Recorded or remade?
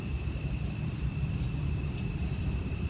remade